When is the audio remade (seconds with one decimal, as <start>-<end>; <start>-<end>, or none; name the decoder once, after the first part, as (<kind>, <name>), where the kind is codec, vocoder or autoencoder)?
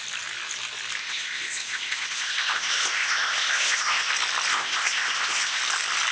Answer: 1.0-4.1 (codec, ZipCodec); 4.5-5.6